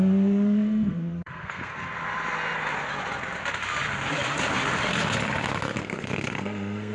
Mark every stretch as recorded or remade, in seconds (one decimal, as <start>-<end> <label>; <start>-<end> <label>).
0.0-1.7 remade; 1.7-5.8 recorded; 5.8-6.9 remade

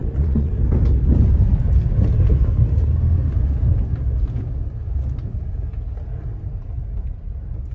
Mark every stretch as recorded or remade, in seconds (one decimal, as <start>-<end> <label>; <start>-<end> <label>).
0.0-0.5 remade; 0.5-7.7 recorded